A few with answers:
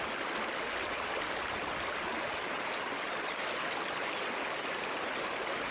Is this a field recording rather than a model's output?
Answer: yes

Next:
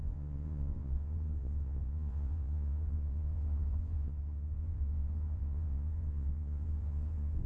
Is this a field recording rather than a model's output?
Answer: no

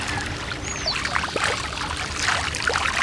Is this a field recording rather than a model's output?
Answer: yes